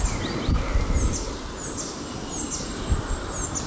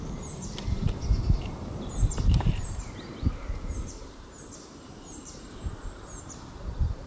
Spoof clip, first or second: second